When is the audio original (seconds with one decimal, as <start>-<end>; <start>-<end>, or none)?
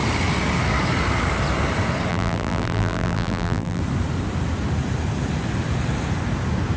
0.0-2.1; 3.8-6.8